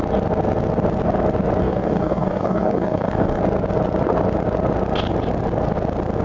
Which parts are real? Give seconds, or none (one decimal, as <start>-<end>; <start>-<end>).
0.0-1.6; 3.4-6.2